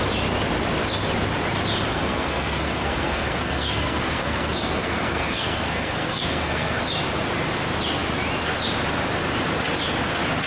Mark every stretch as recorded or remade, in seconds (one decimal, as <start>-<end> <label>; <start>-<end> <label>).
0.0-1.9 recorded; 1.9-6.8 remade; 6.8-10.5 recorded